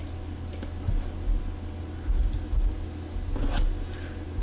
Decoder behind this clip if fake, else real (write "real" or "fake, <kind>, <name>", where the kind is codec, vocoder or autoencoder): real